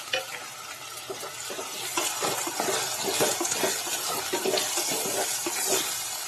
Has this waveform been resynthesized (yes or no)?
no